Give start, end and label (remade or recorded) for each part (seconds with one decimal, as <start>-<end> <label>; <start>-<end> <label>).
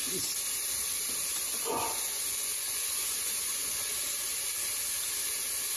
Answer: 0.0-1.3 recorded; 1.3-3.9 remade; 3.9-5.8 recorded